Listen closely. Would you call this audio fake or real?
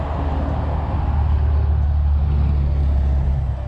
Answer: real